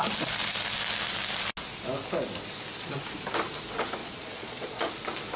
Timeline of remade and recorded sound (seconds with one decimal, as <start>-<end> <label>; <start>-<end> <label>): 0.0-4.0 recorded; 4.0-4.9 remade; 4.9-5.4 recorded